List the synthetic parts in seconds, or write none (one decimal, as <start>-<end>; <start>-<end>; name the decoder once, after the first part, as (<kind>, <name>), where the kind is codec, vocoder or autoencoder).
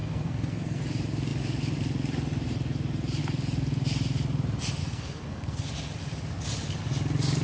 0.0-0.8 (codec, SNAC); 4.8-5.7